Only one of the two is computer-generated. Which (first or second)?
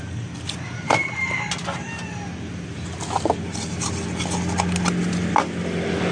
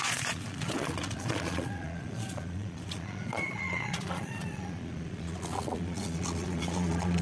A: second